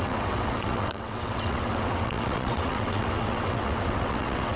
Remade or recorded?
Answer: remade